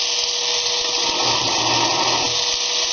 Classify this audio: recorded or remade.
recorded